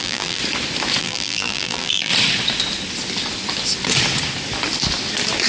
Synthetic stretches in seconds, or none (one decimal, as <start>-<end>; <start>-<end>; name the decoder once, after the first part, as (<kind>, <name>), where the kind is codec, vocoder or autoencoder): 0.0-0.4 (vocoder, BigVGAN v2); 1.0-2.1